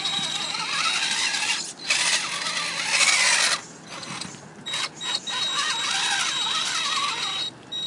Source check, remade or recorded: recorded